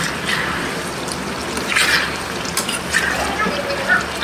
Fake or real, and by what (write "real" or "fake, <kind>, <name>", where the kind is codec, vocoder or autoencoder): real